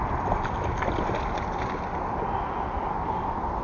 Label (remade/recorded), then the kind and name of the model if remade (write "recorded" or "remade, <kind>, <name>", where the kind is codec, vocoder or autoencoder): recorded